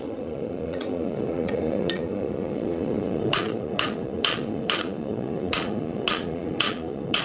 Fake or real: fake